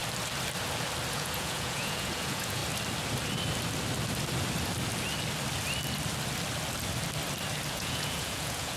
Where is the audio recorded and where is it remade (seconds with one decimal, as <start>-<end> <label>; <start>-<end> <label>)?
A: 0.0-1.1 recorded; 1.1-2.6 remade; 2.6-7.7 recorded; 7.7-8.8 remade